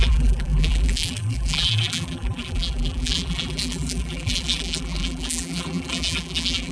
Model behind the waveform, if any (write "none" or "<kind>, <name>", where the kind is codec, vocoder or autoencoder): vocoder, BigVGAN v2